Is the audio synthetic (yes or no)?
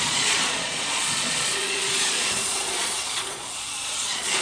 yes